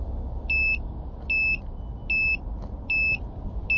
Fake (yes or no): no